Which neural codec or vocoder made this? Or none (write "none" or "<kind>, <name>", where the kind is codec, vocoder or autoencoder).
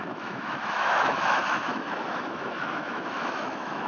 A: autoencoder, DAC-VAE